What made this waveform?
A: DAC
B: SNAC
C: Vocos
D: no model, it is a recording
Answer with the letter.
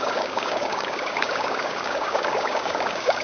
A